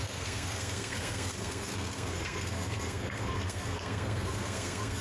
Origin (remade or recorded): remade